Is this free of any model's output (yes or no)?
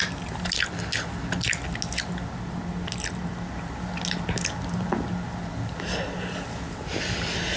yes